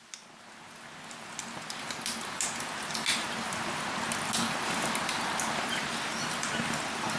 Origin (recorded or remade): recorded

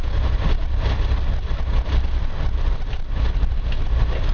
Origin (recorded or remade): recorded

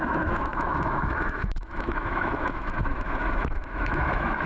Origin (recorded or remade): remade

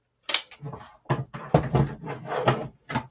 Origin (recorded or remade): recorded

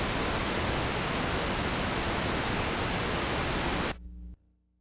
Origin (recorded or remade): recorded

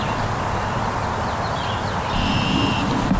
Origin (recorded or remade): recorded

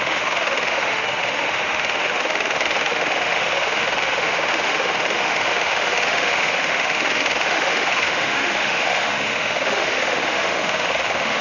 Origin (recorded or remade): remade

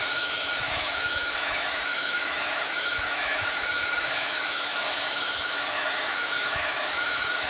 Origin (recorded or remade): remade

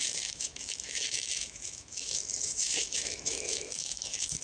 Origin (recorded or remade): remade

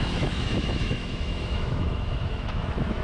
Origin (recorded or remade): remade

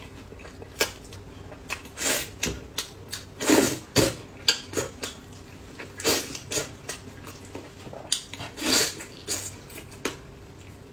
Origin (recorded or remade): recorded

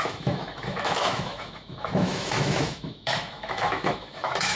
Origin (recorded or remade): remade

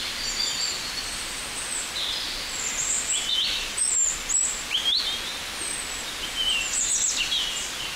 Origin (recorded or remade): recorded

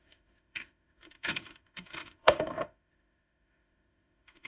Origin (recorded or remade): remade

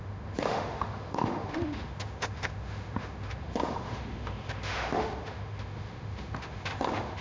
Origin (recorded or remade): remade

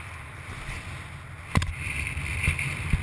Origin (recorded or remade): recorded